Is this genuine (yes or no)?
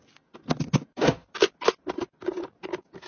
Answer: yes